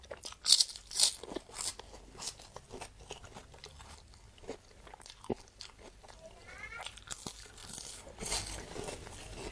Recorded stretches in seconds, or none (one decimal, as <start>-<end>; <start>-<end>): 0.0-9.5